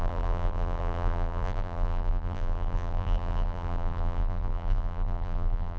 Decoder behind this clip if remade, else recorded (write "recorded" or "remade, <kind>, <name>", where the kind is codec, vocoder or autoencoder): remade, vocoder, BigVGAN v2